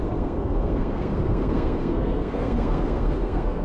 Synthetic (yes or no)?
yes